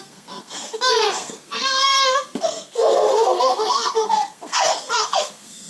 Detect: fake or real fake